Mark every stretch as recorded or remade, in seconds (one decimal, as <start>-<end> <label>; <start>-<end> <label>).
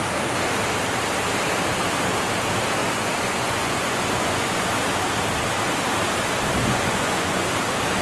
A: 0.0-2.8 recorded; 2.8-4.7 remade; 4.7-6.6 recorded; 6.6-7.5 remade; 7.5-8.0 recorded